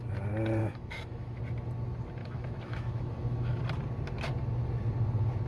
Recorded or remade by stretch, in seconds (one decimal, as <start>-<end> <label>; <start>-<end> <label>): 0.0-0.6 recorded; 0.6-1.4 remade; 1.4-2.2 recorded; 2.2-3.6 remade; 3.6-5.5 recorded